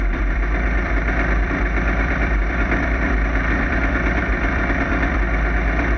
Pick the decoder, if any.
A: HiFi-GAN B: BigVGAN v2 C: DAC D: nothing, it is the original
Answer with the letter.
B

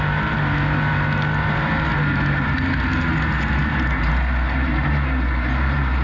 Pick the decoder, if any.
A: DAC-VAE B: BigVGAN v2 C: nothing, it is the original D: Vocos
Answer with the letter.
C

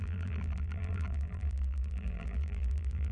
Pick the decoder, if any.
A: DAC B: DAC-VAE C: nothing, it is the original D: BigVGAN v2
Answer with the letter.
D